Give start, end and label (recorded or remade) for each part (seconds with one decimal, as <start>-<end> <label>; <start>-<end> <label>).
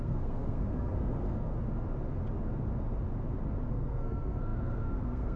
0.0-1.5 remade; 1.5-3.7 recorded; 3.7-5.4 remade